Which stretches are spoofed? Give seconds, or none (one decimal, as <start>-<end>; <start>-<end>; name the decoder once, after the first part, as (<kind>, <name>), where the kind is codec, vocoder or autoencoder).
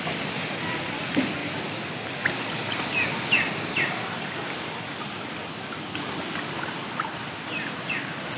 none